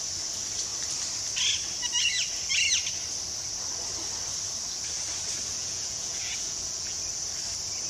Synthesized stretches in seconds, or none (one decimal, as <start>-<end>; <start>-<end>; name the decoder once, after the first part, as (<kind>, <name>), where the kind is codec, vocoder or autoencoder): 5.6-7.0 (vocoder, Vocos)